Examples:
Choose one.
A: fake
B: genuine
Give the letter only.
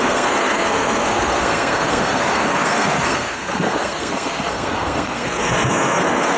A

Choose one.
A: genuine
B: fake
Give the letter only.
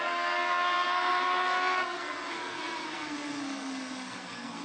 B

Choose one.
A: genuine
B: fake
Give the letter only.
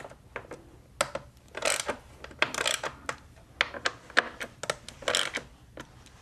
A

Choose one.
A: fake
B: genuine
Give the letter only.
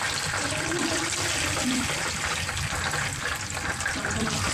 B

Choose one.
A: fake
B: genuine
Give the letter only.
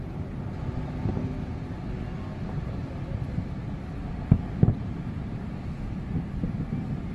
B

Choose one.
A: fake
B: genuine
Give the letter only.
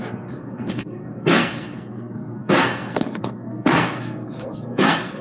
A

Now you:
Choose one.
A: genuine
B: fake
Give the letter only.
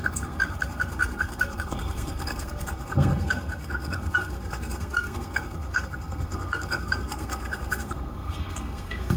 B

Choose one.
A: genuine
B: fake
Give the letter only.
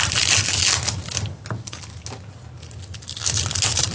A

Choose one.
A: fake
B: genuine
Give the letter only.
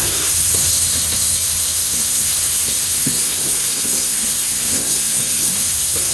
A